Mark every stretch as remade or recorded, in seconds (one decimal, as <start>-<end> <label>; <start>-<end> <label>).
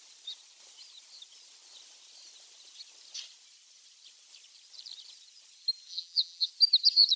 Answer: 0.0-5.9 recorded; 5.9-6.5 remade; 6.5-7.2 recorded